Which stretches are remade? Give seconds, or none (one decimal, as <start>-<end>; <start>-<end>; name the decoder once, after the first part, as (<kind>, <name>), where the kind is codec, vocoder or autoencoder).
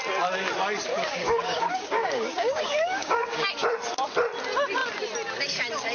0.9-3.5 (codec, DAC)